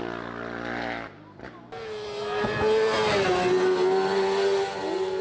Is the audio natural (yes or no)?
yes